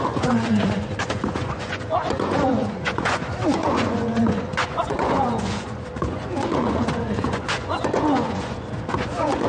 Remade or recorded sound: remade